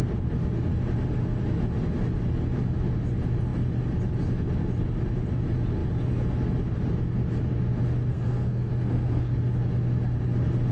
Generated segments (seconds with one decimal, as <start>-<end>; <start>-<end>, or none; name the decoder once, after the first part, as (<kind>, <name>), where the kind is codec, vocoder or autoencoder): 8.1-9.3 (codec, SNAC)